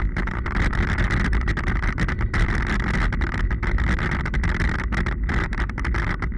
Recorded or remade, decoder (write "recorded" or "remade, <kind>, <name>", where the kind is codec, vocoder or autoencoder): recorded